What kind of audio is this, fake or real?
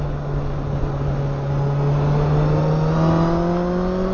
real